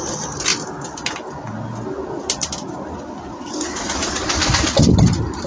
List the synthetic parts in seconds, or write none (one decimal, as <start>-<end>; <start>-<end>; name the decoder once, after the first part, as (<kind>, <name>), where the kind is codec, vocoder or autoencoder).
0.0-0.5 (vocoder, BigVGAN v2); 3.4-5.5